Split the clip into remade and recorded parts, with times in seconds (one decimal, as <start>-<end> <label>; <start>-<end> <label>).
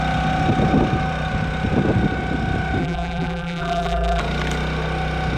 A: 0.0-2.8 recorded; 2.8-4.2 remade; 4.2-5.4 recorded